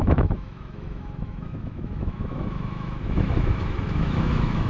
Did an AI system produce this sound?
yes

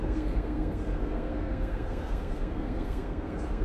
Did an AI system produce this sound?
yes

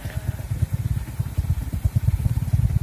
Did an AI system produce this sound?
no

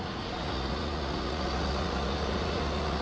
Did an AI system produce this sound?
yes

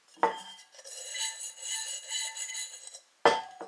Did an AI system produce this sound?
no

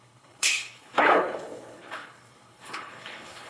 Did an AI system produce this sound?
yes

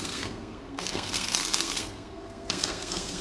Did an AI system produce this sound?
yes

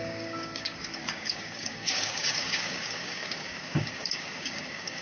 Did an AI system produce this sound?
yes